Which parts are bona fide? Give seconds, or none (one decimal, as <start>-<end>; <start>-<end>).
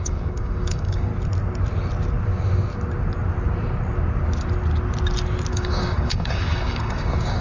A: 1.1-5.5